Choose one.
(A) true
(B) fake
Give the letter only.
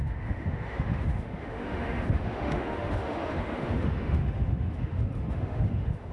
B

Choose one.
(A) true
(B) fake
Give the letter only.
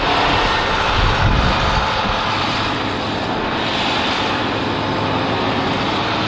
A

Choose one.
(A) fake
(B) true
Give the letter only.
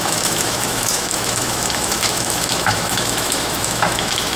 A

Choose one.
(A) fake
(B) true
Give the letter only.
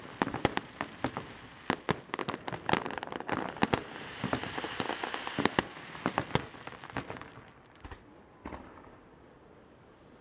B